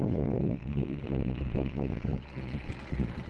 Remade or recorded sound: remade